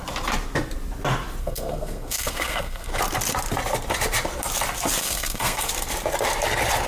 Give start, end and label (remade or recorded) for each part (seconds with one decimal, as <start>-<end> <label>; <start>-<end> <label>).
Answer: 0.0-1.4 recorded; 1.4-2.9 remade; 2.9-5.0 recorded; 5.0-5.7 remade; 5.7-6.9 recorded